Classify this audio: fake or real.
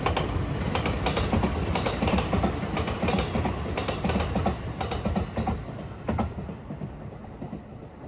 real